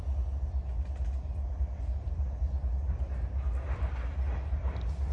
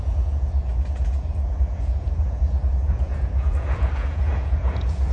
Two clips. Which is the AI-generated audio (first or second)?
second